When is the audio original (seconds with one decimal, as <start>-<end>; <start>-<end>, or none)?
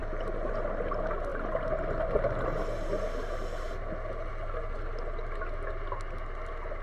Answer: 0.0-6.8